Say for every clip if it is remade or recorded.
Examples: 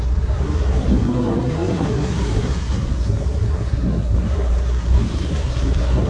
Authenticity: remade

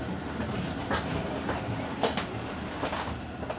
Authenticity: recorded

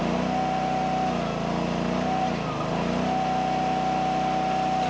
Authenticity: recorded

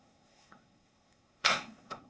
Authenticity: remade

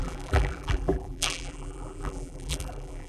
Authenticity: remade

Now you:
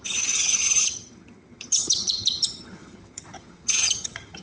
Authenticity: remade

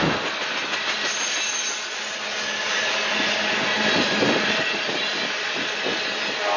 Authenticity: recorded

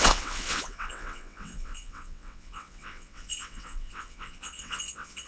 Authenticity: remade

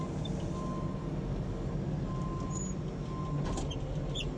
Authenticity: recorded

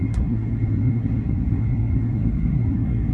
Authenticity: remade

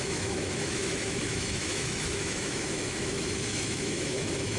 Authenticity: remade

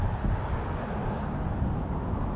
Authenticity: recorded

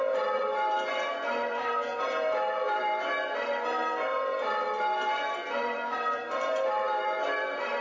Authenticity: remade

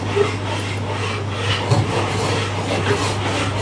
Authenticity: recorded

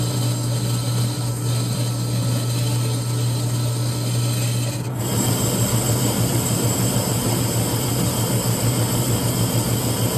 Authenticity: recorded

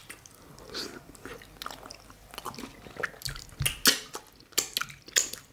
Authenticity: recorded